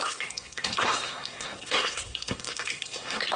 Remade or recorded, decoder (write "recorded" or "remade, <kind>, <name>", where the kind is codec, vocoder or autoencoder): remade, codec, SNAC